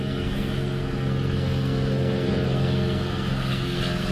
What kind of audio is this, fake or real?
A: fake